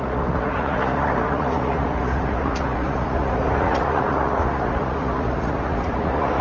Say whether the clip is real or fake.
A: fake